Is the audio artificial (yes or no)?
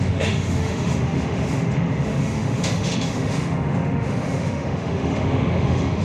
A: yes